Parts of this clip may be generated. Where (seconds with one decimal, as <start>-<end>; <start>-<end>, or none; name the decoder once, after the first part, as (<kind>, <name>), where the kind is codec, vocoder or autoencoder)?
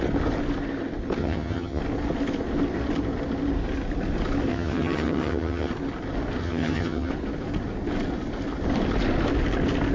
1.2-1.8 (vocoder, HiFi-GAN); 4.5-5.7; 6.4-7.1